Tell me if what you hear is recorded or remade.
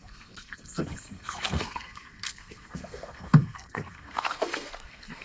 remade